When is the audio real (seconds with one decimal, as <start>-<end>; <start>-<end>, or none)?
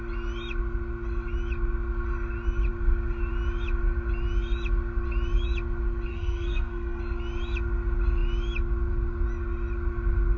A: 0.0-6.1; 7.0-10.4